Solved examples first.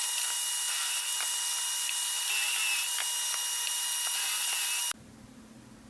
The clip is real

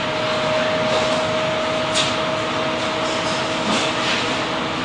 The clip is real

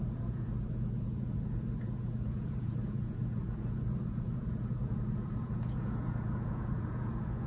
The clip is fake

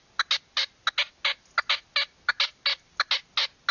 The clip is real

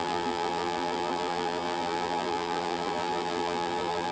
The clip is fake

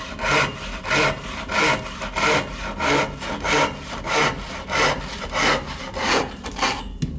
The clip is real